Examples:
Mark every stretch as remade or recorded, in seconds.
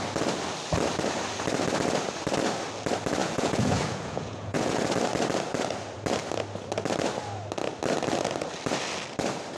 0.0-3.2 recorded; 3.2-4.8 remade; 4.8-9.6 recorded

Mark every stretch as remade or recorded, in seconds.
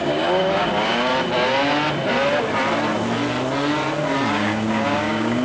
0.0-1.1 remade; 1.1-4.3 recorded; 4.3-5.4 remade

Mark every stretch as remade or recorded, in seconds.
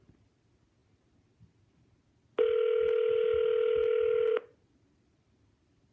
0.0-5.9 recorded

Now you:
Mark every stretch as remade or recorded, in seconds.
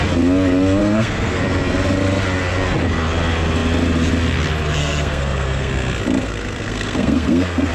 0.0-0.8 recorded; 0.8-1.4 remade; 1.4-4.8 recorded; 4.8-5.7 remade; 5.7-6.2 recorded; 6.2-7.7 remade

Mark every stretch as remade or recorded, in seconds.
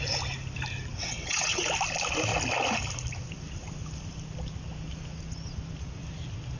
0.0-0.9 recorded; 0.9-1.6 remade; 1.6-6.6 recorded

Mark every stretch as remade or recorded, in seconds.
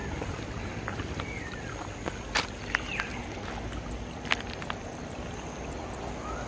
0.0-6.5 recorded